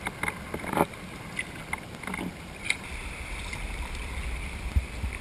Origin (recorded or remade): recorded